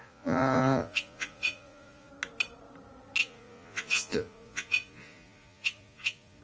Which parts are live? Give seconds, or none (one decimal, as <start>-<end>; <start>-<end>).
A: 2.1-3.2